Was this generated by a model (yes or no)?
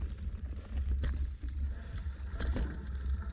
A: no